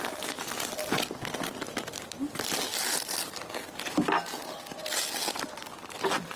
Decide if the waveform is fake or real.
real